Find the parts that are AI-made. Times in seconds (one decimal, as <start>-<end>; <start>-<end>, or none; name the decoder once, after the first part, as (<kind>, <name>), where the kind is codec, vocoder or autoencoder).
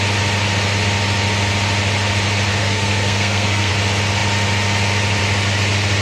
2.6-3.7 (codec, SNAC)